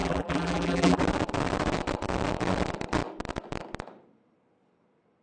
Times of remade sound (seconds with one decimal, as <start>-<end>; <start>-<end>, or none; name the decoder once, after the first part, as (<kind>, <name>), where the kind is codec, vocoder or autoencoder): 0.0-1.0 (vocoder, BigVGAN v2)